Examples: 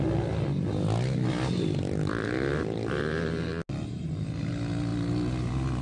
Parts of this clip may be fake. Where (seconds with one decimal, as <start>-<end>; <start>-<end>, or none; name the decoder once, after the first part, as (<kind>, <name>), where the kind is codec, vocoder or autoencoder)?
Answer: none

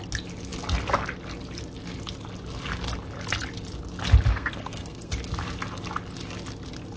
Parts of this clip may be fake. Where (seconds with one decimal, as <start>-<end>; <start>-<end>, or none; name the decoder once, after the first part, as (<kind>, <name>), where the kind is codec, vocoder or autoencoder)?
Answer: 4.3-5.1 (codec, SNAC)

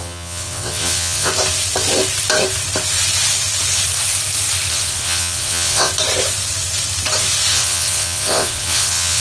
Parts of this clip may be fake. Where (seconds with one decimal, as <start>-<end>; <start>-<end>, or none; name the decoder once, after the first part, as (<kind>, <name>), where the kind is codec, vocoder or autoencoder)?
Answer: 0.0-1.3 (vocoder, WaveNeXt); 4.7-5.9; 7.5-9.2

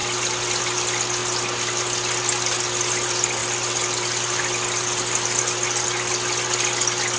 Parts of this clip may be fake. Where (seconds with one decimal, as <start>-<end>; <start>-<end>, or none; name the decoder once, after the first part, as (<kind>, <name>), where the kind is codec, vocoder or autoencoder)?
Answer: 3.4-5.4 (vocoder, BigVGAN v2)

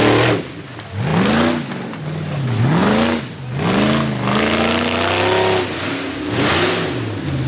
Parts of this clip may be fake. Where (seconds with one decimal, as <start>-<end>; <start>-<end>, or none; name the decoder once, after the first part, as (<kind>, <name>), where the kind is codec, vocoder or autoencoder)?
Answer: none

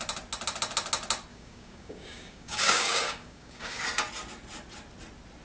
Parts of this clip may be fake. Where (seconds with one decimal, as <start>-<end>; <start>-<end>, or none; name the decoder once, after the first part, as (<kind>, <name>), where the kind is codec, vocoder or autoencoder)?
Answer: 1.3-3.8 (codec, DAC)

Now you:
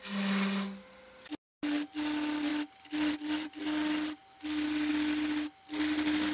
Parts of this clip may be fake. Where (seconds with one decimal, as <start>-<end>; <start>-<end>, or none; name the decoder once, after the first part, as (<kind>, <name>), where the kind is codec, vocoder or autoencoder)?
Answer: none

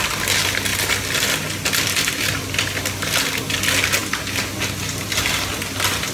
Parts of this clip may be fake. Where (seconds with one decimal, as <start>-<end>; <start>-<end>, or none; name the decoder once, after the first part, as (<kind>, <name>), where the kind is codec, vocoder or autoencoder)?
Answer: none